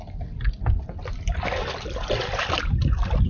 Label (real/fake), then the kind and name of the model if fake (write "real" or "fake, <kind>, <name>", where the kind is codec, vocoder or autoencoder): real